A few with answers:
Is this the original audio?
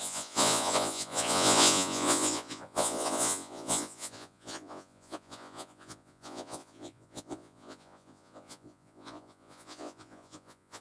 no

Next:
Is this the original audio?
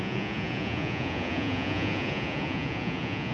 no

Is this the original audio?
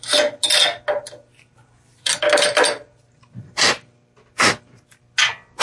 yes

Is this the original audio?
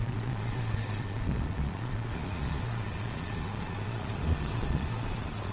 no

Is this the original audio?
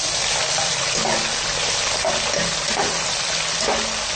yes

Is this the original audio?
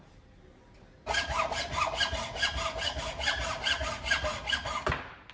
yes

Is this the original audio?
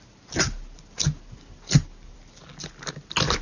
yes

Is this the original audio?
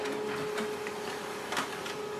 yes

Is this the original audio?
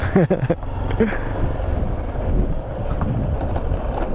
yes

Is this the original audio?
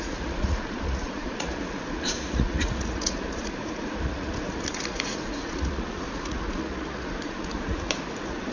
no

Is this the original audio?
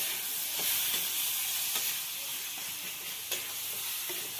yes